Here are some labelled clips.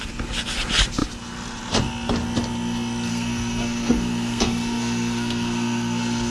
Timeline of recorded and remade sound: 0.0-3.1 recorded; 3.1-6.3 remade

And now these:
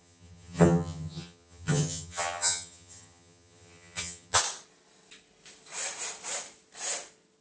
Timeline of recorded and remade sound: 0.0-4.4 remade; 4.4-7.4 recorded

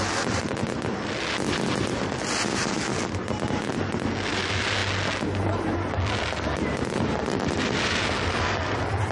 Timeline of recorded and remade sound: 0.0-9.1 recorded